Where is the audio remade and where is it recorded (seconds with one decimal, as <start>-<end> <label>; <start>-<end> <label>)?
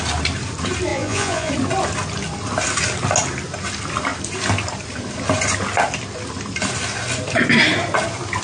0.0-0.9 recorded; 0.9-1.5 remade; 1.5-8.4 recorded